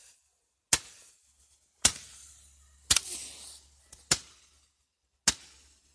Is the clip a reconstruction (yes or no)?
no